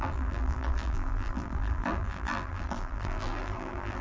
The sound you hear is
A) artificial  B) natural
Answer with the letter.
A